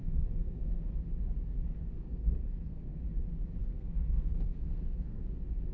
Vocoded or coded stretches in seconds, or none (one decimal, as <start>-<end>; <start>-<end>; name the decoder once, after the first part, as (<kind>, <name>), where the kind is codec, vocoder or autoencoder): 0.0-0.9 (codec, SNAC); 1.8-3.0; 3.6-5.2